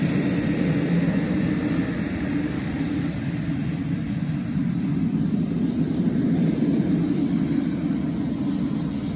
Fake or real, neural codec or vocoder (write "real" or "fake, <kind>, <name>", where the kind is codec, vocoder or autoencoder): real